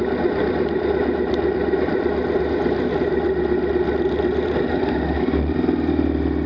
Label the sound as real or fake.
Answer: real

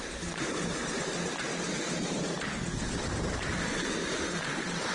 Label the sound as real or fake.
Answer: fake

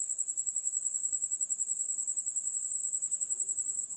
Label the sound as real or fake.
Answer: real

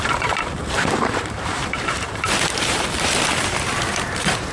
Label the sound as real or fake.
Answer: fake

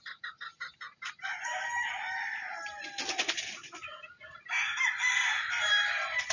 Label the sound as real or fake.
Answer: real